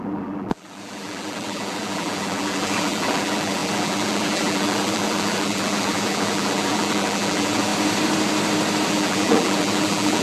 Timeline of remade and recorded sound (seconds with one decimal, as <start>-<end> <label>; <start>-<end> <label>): 0.0-7.7 remade; 7.7-8.9 recorded; 8.9-10.2 remade